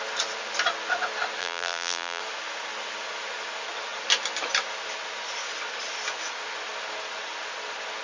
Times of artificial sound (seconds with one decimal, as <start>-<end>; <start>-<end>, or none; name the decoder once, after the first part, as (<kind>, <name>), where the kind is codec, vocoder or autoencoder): 1.4-2.2 (vocoder, BigVGAN v2)